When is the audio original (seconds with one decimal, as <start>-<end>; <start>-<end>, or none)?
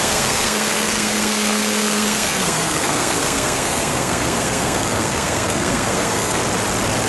6.4-7.1